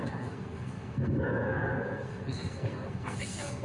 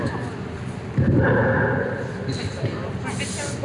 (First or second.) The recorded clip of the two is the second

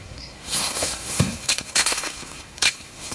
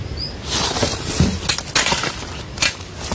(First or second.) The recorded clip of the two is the second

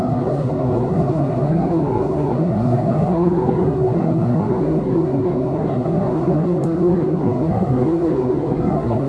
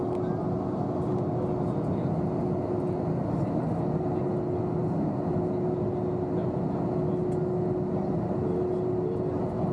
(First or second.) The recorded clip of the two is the second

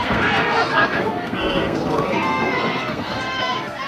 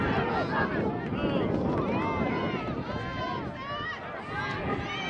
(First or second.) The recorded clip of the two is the second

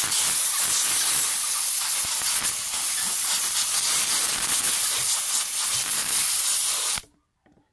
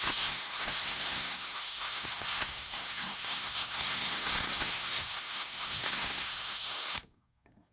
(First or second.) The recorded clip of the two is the first